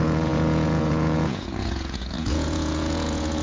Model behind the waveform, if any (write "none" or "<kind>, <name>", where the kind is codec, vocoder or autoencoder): vocoder, Vocos